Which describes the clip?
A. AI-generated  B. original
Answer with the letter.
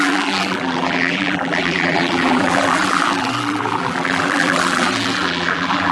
A